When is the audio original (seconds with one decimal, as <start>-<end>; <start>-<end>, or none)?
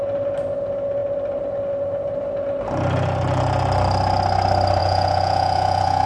0.0-4.8